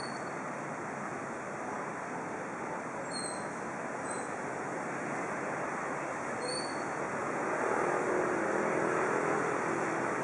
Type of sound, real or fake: real